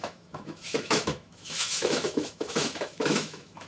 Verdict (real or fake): fake